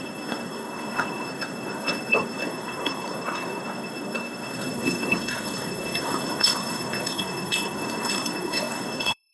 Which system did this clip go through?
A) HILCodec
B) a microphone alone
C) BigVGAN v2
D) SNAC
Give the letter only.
D